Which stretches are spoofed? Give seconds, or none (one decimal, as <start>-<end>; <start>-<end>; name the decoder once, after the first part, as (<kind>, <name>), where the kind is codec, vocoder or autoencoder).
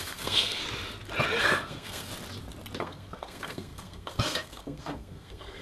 0.0-0.6 (codec, SNAC); 1.4-2.1; 2.8-5.6